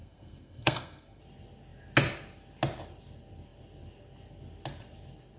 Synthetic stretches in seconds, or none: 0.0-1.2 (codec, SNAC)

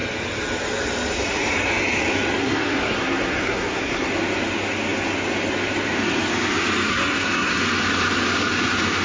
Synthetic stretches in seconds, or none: 2.4-4.1 (codec, SNAC); 6.9-7.6

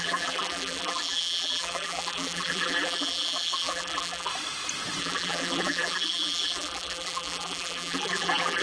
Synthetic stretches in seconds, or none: 0.0-4.3 (vocoder, BigVGAN v2); 5.0-8.6

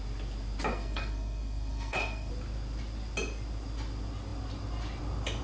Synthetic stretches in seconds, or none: 0.7-2.3 (codec, SNAC)

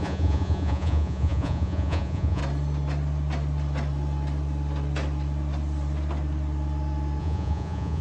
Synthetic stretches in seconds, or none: 0.0-2.4 (vocoder, Vocos); 7.2-8.0

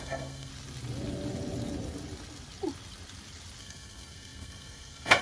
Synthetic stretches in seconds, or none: 0.0-0.5 (codec, SNAC); 3.6-5.2

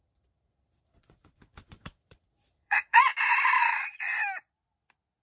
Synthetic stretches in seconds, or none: 0.0-3.1 (vocoder, Vocos); 3.6-4.1